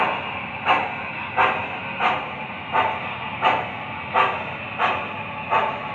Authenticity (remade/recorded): recorded